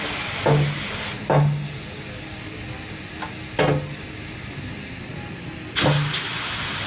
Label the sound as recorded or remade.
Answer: recorded